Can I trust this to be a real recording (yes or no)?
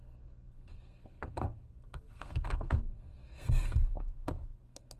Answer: no